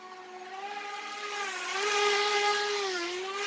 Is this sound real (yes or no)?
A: yes